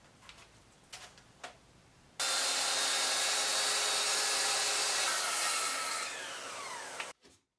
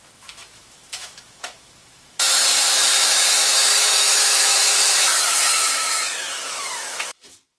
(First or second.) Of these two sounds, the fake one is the second